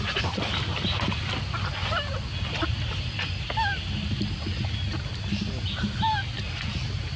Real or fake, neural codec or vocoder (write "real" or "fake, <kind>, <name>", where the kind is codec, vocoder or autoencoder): real